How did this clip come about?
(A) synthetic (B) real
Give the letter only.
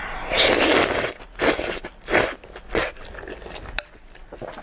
B